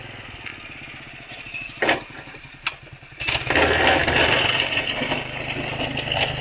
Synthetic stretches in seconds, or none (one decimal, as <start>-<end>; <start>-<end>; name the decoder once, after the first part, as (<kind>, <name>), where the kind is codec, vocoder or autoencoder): none